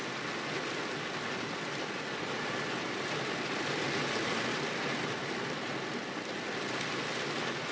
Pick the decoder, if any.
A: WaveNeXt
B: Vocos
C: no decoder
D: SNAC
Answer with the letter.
C